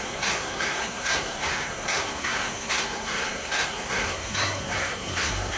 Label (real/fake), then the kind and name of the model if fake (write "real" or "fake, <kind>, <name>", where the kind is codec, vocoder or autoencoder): fake, codec, SNAC